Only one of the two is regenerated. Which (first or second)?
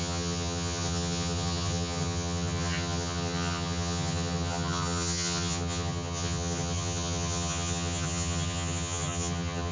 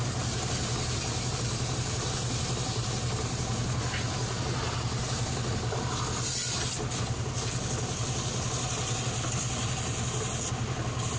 first